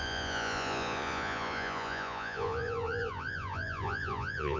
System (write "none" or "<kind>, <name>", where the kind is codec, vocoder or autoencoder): vocoder, Vocos